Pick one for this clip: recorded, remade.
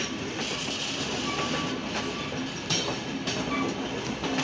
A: recorded